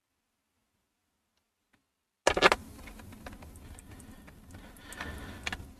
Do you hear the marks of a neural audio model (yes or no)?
no